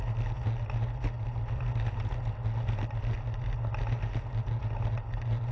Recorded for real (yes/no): yes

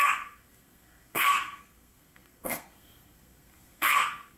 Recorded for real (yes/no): no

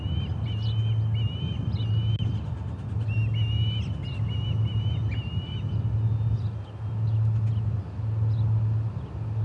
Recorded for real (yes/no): yes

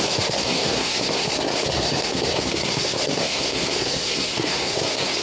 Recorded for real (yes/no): no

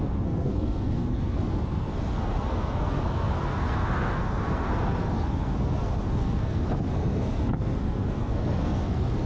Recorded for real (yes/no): no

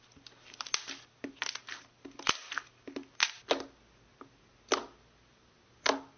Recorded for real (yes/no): yes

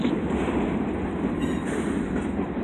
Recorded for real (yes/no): yes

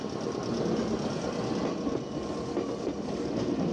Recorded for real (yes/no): yes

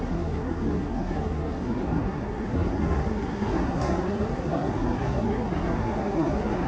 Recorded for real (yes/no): no